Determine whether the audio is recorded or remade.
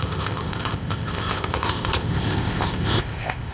remade